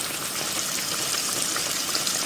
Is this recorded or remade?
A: recorded